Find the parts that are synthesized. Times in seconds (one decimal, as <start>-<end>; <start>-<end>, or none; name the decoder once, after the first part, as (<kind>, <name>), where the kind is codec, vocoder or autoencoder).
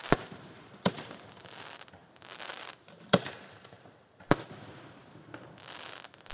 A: 0.0-0.7 (vocoder, BigVGAN v2); 2.0-4.0